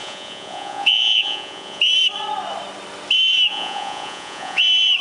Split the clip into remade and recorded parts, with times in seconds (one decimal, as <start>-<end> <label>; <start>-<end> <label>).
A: 0.0-1.8 remade; 1.8-3.5 recorded; 3.5-4.6 remade; 4.6-5.0 recorded